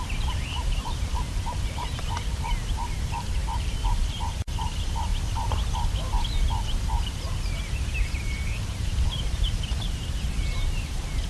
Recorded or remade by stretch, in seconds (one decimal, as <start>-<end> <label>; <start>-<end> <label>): 0.0-5.1 remade; 5.1-7.3 recorded; 7.3-11.3 remade